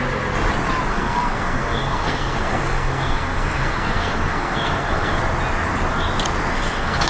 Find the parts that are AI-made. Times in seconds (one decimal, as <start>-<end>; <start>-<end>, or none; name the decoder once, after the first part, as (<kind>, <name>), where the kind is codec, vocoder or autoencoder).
0.9-5.2 (codec, SNAC); 6.5-7.1